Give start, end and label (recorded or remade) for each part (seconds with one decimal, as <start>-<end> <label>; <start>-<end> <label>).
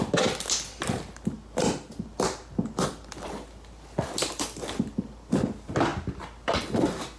0.0-7.2 recorded